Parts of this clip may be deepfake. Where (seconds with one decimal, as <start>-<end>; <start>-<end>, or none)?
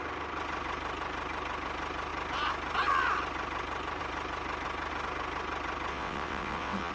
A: 5.9-6.9